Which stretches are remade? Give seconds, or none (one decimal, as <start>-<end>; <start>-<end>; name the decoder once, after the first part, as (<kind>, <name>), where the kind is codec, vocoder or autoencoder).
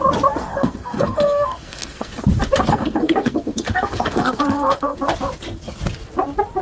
0.4-2.1 (codec, SNAC); 2.7-5.0